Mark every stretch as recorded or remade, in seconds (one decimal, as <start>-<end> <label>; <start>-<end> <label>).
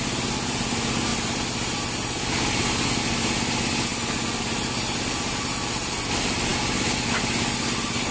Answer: 0.0-8.1 recorded